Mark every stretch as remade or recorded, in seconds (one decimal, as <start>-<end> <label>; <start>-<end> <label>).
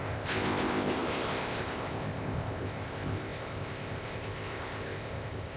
0.0-5.6 remade